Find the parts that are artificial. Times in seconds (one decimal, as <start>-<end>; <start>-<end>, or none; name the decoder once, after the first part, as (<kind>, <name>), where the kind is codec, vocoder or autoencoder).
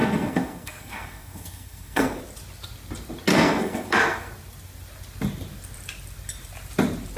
0.0-2.2 (codec, SNAC); 3.3-4.3